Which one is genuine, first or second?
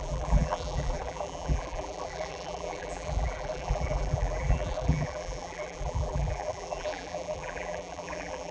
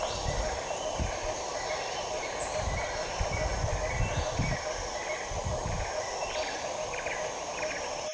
second